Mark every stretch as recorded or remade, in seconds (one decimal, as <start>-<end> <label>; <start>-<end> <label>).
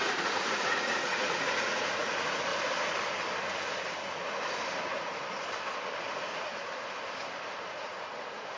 0.0-2.5 remade; 2.5-6.0 recorded; 6.0-6.5 remade; 6.5-7.6 recorded; 7.6-8.6 remade